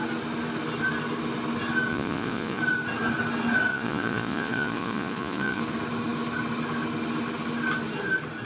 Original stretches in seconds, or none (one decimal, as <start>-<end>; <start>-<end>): 0.0-1.9; 2.6-3.7; 5.6-8.5